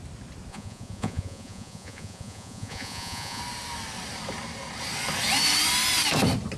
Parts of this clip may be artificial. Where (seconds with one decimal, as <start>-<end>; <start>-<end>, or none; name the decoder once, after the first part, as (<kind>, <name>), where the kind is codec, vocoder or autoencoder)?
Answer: 0.5-3.4 (vocoder, Vocos)